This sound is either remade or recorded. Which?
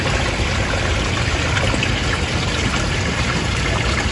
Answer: recorded